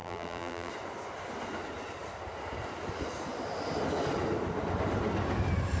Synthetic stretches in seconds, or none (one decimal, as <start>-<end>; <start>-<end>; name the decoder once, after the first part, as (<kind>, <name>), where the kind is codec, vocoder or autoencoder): 0.0-0.7 (vocoder, BigVGAN v2)